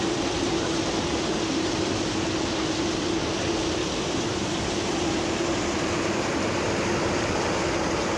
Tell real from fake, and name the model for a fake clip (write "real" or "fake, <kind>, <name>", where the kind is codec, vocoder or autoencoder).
real